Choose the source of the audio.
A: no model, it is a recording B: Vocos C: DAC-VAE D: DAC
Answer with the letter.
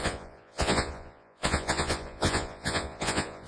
B